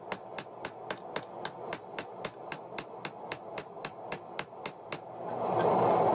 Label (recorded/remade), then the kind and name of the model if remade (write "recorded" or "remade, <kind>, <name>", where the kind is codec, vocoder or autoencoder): recorded